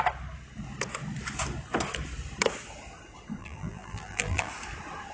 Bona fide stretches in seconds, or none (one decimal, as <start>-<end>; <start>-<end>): 0.0-3.4; 4.5-5.1